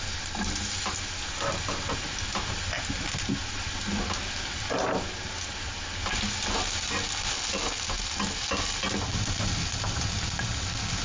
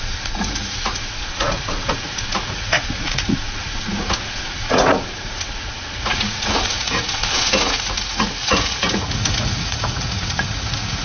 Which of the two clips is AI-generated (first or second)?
second